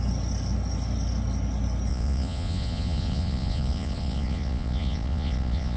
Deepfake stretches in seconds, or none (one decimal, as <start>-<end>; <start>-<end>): 1.9-5.8